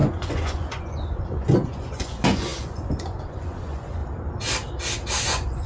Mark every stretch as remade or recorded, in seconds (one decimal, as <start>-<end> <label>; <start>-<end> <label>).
0.0-4.0 remade; 4.0-5.2 recorded; 5.2-5.7 remade